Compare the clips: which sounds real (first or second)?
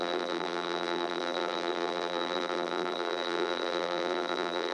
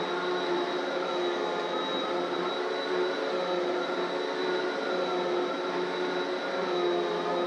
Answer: second